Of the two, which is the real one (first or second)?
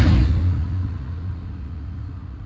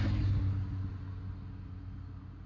second